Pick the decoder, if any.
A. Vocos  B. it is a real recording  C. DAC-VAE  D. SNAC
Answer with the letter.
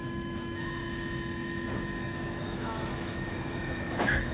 C